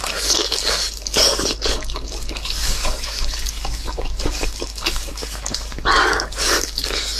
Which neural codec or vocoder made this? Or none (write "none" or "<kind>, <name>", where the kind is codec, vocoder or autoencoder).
codec, DAC